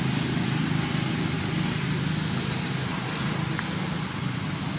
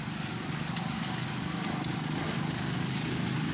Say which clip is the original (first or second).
first